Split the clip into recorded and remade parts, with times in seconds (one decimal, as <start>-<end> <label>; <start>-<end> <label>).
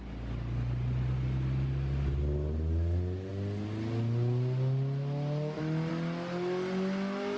0.0-7.4 recorded